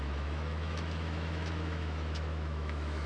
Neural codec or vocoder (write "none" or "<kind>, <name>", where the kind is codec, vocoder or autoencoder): autoencoder, DAC-VAE